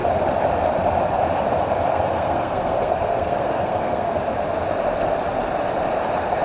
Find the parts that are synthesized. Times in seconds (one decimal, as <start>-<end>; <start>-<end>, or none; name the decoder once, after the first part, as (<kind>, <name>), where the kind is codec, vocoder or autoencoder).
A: 1.9-4.2 (codec, SNAC)